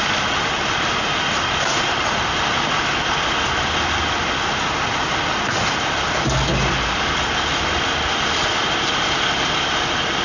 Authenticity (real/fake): real